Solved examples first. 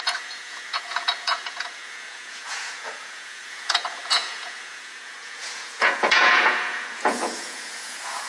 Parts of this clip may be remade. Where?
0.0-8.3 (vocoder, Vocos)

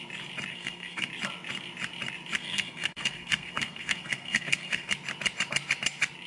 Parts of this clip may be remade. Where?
0.5-1.1 (codec, SNAC); 2.4-4.9